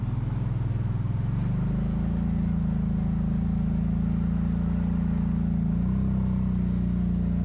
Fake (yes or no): no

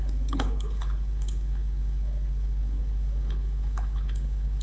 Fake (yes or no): yes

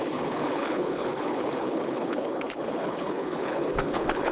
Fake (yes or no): yes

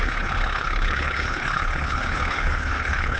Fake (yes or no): yes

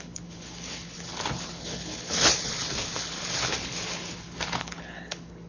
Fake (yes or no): yes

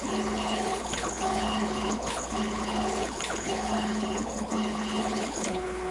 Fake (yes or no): yes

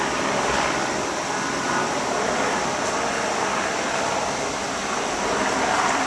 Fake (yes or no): no